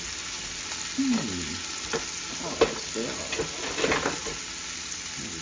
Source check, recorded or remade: recorded